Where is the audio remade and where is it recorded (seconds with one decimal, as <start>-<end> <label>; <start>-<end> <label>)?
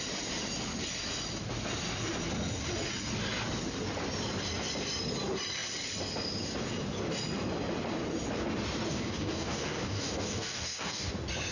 0.0-8.9 recorded; 8.9-11.1 remade; 11.1-11.5 recorded